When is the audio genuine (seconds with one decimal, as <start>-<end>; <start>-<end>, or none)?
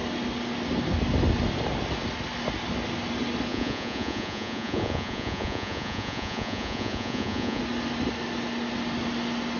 0.0-3.5; 7.6-9.6